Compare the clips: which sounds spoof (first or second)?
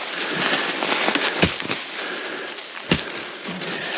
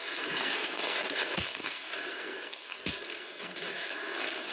second